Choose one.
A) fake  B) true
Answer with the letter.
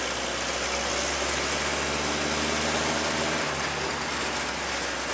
B